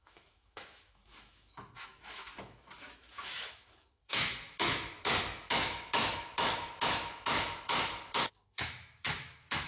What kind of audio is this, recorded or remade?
remade